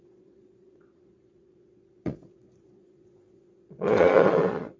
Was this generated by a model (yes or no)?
yes